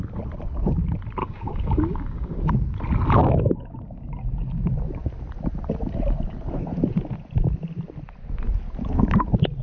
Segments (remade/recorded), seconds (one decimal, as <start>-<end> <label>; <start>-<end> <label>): 0.0-1.2 recorded; 1.2-2.5 remade; 2.5-3.2 recorded; 3.2-3.8 remade; 3.8-9.6 recorded